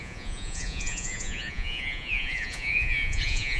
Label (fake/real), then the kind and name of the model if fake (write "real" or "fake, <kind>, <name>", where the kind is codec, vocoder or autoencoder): fake, vocoder, Vocos